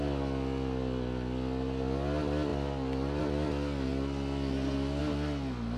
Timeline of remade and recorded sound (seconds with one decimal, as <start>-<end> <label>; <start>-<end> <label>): 0.0-5.8 recorded